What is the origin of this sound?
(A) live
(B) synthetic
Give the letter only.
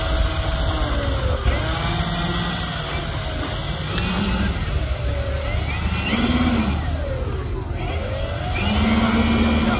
A